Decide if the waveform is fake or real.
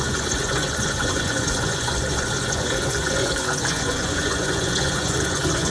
fake